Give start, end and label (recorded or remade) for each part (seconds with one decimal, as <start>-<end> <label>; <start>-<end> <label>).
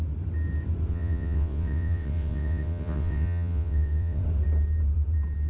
0.0-0.9 recorded; 0.9-4.2 remade; 4.2-5.5 recorded